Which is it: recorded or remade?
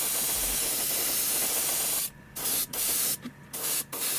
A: recorded